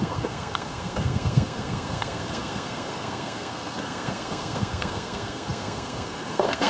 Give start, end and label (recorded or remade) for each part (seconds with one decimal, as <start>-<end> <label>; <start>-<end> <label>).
0.0-6.7 remade